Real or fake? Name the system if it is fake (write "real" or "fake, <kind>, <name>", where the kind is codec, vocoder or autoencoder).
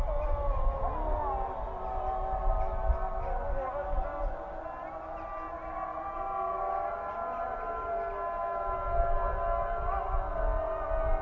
real